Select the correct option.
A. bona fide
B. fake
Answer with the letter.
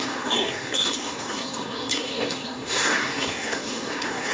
B